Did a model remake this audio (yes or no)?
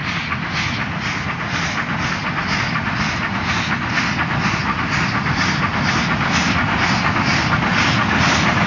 no